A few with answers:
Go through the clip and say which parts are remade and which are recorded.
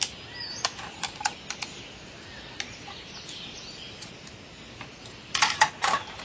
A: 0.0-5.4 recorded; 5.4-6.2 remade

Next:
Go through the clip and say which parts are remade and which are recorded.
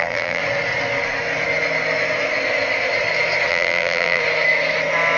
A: 0.0-0.4 remade; 0.4-3.5 recorded; 3.5-4.2 remade; 4.2-5.2 recorded